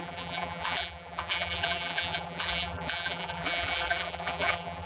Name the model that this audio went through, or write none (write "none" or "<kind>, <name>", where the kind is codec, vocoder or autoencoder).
vocoder, BigVGAN v2